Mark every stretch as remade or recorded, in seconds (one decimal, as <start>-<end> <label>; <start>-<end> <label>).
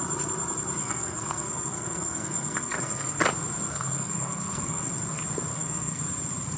0.0-0.8 recorded; 0.8-3.2 remade; 3.2-3.7 recorded; 3.7-4.9 remade; 4.9-5.5 recorded; 5.5-6.0 remade; 6.0-6.6 recorded